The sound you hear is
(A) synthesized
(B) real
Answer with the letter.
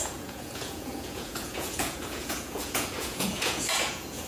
A